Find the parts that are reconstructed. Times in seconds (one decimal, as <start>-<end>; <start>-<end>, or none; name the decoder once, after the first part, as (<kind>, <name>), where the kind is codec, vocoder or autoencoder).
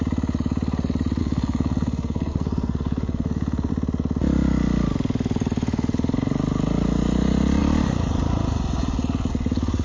1.2-3.7 (codec, SNAC)